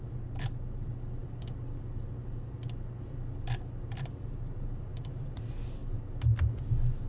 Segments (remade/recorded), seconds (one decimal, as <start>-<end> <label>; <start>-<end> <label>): 0.0-7.1 recorded